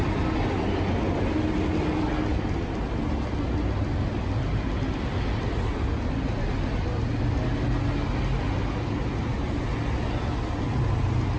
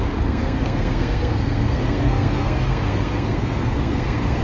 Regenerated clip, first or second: second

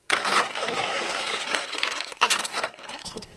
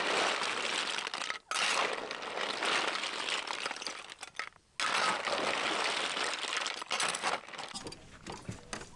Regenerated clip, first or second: first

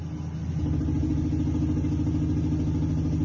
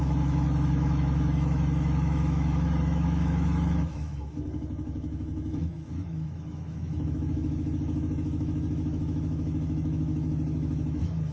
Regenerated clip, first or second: second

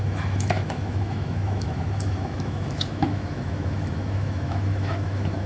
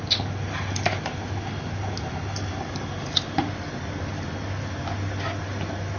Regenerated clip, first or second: first